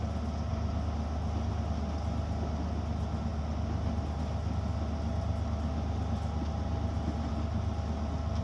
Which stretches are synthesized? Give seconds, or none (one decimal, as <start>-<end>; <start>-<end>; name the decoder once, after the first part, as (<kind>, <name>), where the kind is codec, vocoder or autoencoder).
none